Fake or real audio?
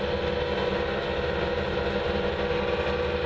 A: real